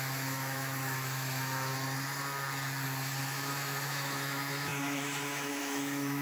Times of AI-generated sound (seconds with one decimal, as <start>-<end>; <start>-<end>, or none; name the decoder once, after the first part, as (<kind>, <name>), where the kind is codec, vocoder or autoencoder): 0.0-1.7 (autoencoder, DAC-VAE); 3.2-6.2